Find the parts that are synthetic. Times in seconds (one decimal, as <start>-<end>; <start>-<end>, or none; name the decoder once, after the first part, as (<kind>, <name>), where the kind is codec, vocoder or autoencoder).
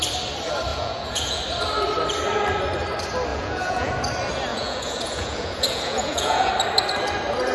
0.7-1.4 (vocoder, Vocos); 3.3-3.9; 4.5-6.5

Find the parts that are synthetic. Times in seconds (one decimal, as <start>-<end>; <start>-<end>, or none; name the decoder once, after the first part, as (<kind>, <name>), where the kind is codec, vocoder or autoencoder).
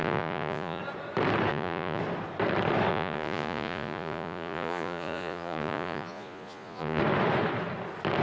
0.0-0.8 (vocoder, Vocos); 1.5-2.0; 2.9-7.0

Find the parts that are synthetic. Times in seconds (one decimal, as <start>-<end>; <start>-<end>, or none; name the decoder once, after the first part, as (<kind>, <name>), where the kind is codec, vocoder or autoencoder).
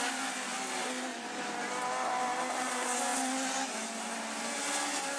none